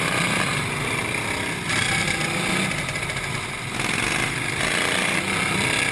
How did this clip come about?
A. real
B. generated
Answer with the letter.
B